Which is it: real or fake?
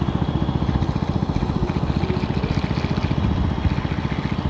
real